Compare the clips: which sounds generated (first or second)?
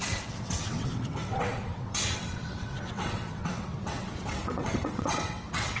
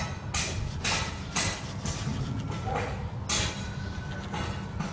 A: first